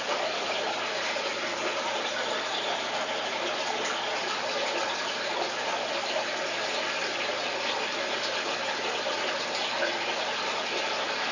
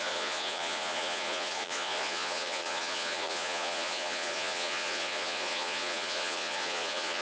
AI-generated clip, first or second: second